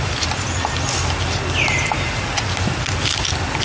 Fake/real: real